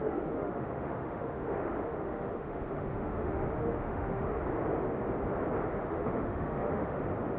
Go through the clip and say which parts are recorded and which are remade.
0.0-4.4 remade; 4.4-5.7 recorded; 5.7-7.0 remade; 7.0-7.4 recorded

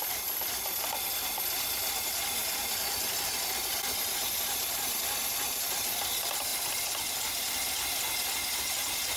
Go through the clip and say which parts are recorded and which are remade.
0.0-9.2 recorded

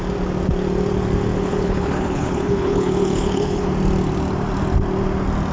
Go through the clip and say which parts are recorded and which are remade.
0.0-1.3 recorded; 1.3-3.7 remade; 3.7-5.5 recorded

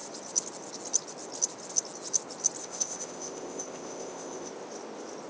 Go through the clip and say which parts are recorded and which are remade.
0.0-2.6 recorded; 2.6-4.5 remade; 4.5-5.3 recorded

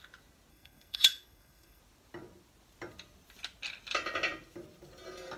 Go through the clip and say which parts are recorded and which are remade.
0.0-0.5 recorded; 0.5-1.8 remade; 1.8-5.4 recorded

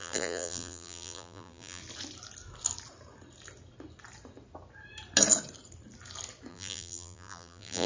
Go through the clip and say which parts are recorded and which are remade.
0.0-1.8 remade; 1.8-6.5 recorded; 6.5-7.9 remade